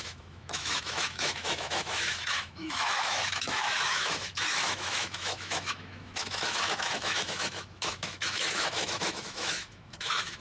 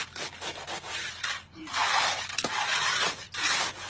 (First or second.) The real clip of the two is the second